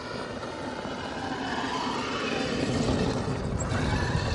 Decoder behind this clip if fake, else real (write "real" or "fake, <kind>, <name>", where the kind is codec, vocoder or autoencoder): real